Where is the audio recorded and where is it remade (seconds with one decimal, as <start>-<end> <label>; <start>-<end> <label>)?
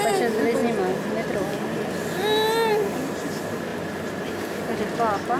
0.0-3.7 recorded; 3.7-4.8 remade; 4.8-5.4 recorded